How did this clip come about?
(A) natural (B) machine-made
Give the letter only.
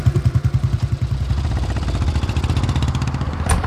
B